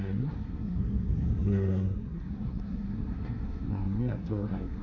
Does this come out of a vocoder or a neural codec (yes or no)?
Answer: yes